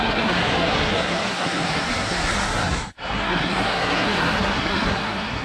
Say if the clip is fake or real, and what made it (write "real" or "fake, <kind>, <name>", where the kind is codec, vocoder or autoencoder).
fake, codec, SNAC